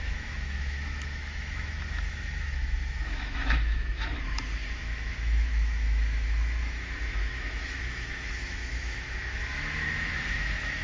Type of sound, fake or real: fake